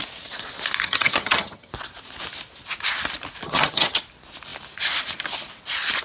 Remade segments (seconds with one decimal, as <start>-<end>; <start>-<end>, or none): 0.8-1.7; 3.4-4.0

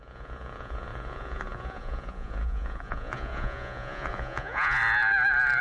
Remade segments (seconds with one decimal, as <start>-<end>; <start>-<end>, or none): 0.0-4.8

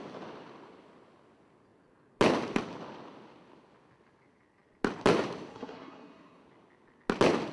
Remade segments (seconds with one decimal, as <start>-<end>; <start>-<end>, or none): 5.5-6.4